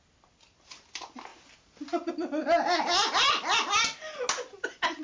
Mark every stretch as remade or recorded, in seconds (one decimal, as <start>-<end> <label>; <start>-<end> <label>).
0.0-5.0 recorded

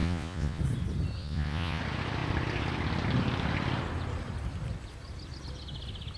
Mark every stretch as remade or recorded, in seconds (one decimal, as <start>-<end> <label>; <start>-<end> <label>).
0.0-0.6 remade; 0.6-1.2 recorded; 1.2-1.8 remade; 1.8-6.2 recorded

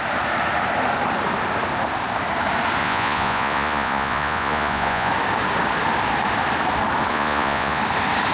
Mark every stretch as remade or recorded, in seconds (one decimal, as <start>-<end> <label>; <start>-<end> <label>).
0.0-2.8 recorded; 2.8-5.1 remade; 5.1-7.1 recorded; 7.1-7.8 remade; 7.8-8.3 recorded